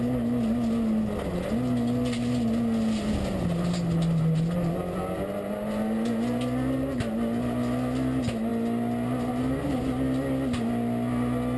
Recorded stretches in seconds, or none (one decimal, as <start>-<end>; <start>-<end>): 0.0-11.6